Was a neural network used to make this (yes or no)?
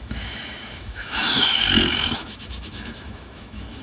yes